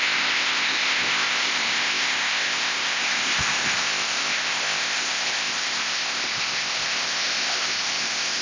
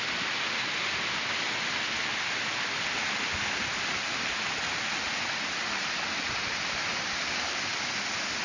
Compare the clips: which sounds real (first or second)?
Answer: second